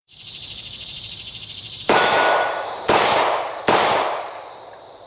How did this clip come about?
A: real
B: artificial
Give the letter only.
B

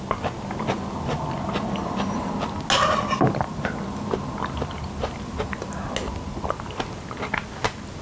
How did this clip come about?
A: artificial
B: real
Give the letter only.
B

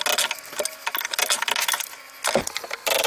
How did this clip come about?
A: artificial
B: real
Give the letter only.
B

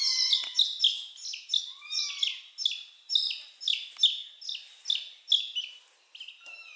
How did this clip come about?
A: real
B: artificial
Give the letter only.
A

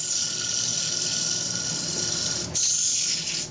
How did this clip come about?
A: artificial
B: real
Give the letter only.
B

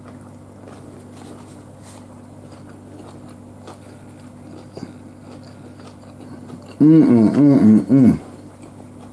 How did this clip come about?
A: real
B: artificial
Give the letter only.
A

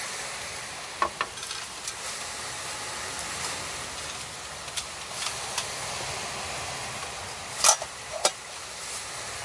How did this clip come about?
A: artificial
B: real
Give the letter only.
B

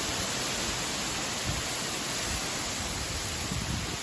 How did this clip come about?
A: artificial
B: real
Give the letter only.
B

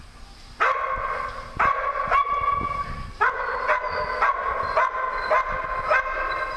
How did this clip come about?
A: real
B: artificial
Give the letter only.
A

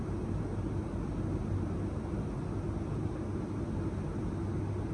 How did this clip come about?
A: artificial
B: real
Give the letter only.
B